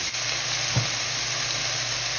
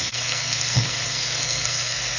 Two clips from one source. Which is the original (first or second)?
first